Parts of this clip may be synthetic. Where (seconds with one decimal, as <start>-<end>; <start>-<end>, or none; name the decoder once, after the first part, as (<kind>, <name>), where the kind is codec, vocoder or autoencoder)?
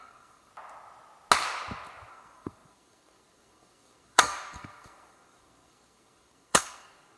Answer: 0.0-0.5 (codec, SNAC); 2.1-7.2